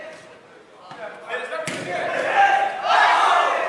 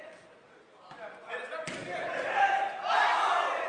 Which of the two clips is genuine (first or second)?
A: first